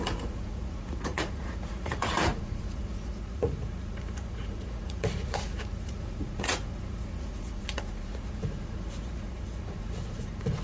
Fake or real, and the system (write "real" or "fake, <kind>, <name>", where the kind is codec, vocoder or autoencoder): fake, vocoder, Vocos